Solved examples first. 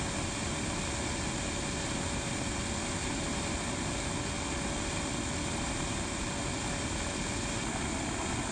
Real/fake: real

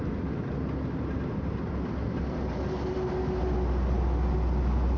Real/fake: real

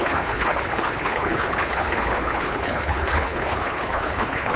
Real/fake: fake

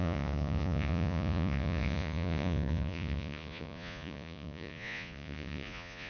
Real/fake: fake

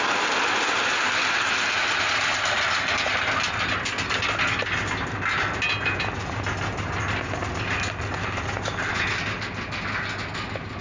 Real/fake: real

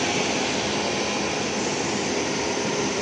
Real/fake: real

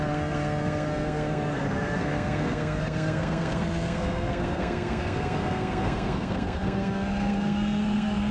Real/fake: fake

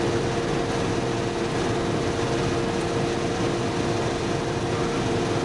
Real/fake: real